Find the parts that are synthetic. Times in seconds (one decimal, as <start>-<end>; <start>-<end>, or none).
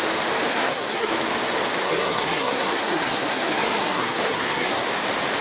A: 0.5-1.1; 1.8-4.8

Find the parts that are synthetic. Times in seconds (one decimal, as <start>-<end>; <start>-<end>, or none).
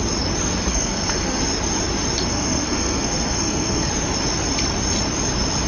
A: 0.7-1.4; 2.3-3.9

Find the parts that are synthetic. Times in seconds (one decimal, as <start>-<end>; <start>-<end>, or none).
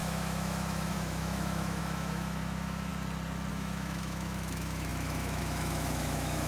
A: 0.0-2.9; 3.5-6.5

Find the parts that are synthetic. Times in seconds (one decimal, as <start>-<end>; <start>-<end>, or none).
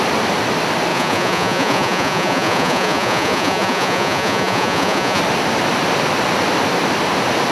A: 0.9-5.2